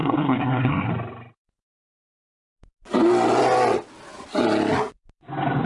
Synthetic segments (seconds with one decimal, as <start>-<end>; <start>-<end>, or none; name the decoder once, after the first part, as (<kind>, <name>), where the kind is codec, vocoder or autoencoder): 0.0-0.9 (codec, SNAC)